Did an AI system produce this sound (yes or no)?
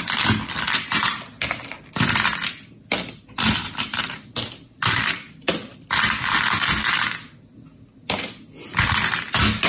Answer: no